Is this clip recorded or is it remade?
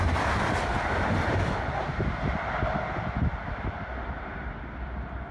recorded